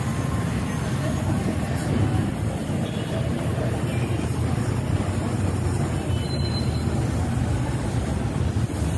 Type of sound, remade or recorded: recorded